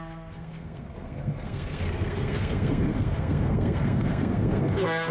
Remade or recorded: remade